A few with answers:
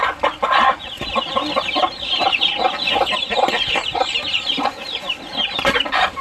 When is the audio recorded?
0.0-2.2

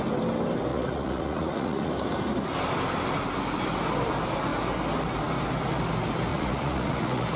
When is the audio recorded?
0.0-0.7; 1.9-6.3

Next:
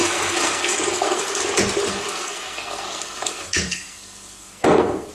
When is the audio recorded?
1.4-1.9